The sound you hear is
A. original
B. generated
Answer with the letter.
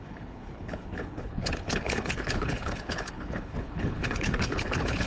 B